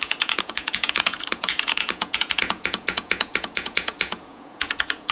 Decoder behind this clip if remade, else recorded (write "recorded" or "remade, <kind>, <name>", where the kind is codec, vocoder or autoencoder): remade, vocoder, Vocos